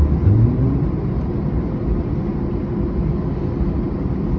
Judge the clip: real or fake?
real